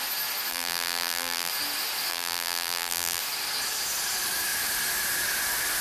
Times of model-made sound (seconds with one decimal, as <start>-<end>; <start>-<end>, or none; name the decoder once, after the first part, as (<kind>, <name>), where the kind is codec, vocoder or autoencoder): 0.5-1.5 (vocoder, BigVGAN v2); 2.1-3.2